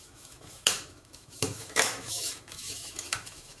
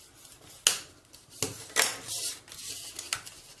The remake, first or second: first